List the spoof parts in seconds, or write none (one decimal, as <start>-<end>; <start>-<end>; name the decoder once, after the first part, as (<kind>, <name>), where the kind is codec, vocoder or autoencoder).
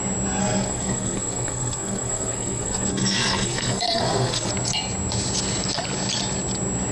0.4-4.5 (codec, SNAC)